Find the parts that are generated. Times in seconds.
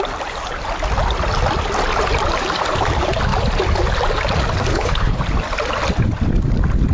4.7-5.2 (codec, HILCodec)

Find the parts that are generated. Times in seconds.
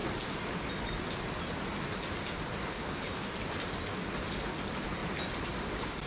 2.7-3.3 (codec, HILCodec)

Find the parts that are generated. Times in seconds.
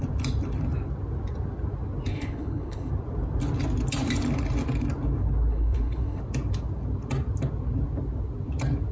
2.1-2.9 (codec, HILCodec); 5.5-6.2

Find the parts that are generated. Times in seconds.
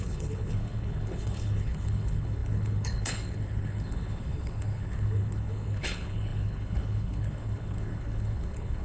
0.0-8.8 (codec, HILCodec)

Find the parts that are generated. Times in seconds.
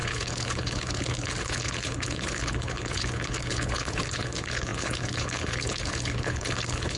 0.0-7.0 (codec, HILCodec)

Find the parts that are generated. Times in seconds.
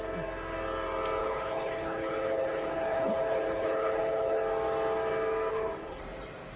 1.2-4.4 (codec, HILCodec); 5.5-6.0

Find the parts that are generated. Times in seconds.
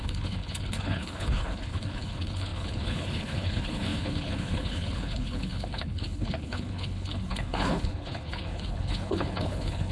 0.0-9.9 (codec, HILCodec)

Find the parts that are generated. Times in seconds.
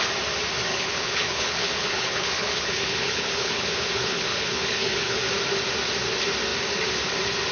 0.7-5.2 (codec, HILCodec)